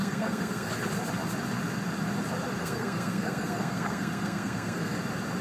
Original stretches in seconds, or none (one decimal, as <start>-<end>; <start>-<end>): 0.7-2.6; 5.0-5.4